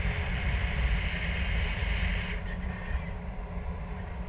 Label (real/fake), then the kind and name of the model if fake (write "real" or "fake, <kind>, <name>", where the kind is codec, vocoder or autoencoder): real